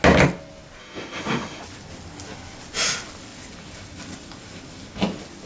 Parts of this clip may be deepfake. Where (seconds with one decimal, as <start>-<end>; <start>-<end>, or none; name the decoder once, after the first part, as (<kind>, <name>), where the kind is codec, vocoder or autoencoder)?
0.8-1.6 (autoencoder, DAC-VAE)